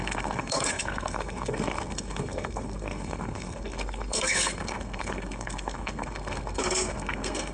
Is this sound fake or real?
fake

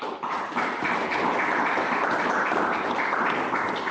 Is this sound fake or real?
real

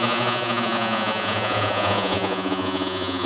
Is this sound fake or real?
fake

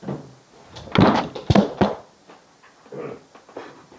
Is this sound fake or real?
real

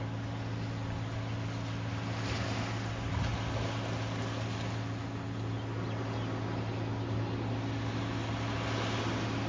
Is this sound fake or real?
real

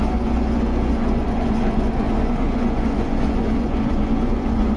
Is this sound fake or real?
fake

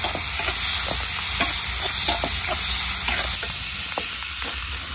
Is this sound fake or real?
real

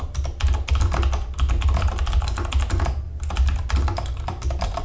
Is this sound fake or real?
real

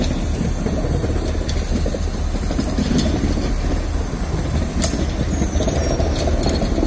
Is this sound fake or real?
real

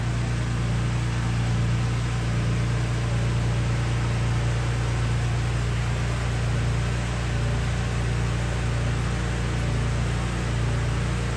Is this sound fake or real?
real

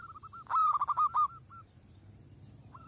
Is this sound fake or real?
real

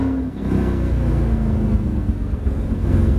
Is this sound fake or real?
fake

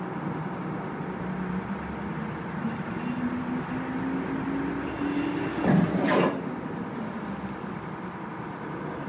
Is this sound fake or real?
real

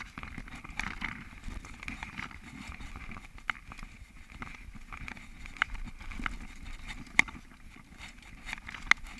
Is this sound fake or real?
real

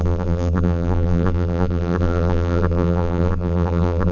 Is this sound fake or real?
fake